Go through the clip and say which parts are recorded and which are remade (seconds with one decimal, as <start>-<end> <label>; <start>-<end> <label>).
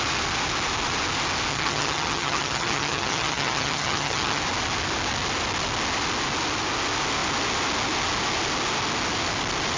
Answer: 0.0-1.5 recorded; 1.5-4.4 remade; 4.4-9.8 recorded